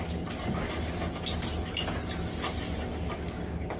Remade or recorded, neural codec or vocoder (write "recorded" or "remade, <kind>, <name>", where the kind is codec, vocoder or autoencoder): recorded